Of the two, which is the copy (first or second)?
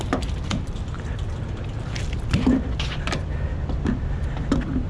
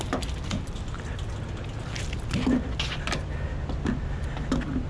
first